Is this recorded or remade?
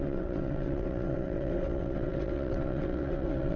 remade